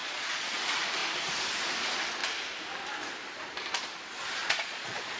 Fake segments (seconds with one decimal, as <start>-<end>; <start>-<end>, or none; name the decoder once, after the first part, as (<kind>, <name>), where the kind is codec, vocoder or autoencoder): 0.0-0.6 (vocoder, Vocos); 4.4-5.2